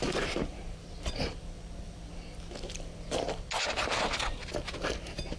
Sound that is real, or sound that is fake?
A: real